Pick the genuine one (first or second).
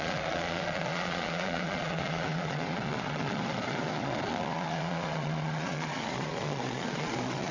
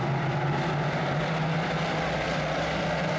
second